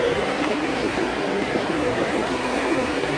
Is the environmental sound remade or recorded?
remade